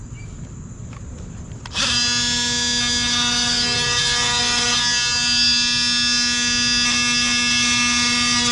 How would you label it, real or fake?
real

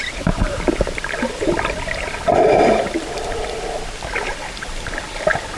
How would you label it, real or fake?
real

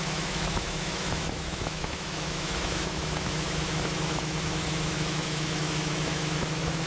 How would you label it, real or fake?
fake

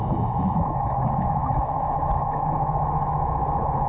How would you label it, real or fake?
fake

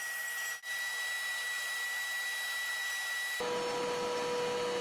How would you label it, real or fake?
real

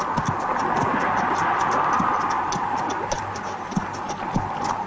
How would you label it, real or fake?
real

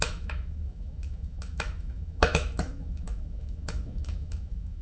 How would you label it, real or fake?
fake